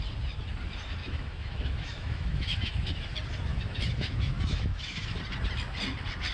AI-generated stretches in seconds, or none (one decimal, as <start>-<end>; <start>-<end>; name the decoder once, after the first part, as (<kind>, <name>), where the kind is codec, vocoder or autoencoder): 1.0-3.1 (autoencoder, DAC-VAE); 3.5-5.2